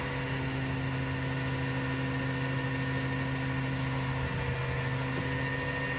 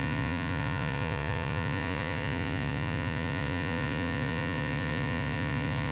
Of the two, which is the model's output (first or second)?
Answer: second